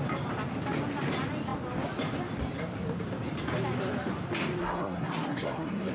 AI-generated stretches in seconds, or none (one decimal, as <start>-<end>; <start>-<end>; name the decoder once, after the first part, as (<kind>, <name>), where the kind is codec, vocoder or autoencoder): 4.6-5.9 (codec, SNAC)